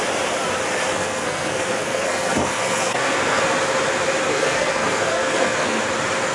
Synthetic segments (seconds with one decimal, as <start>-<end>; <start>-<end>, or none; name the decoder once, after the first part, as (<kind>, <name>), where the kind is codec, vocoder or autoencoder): 0.9-3.4 (codec, SNAC); 4.3-5.8